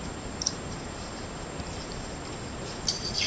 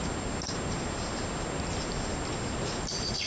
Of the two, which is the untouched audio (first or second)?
second